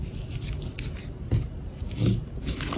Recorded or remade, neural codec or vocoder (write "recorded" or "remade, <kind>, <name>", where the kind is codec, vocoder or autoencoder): recorded